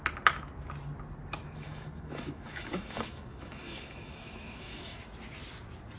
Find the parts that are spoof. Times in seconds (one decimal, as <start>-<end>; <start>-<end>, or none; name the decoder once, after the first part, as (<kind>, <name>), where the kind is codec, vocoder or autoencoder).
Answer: 1.4-5.0 (autoencoder, DAC-VAE)